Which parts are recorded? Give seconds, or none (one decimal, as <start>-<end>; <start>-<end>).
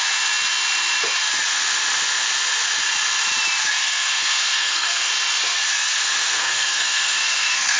0.0-3.8; 5.1-6.4